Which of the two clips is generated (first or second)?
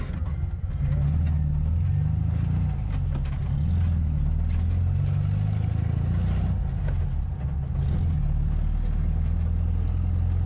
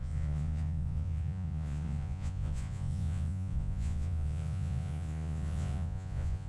second